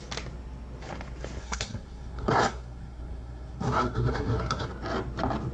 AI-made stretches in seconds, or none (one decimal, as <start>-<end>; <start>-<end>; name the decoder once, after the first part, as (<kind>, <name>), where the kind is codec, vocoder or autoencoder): 1.4-4.7 (codec, SNAC)